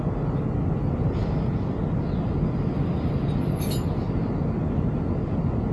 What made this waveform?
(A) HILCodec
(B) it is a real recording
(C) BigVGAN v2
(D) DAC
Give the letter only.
B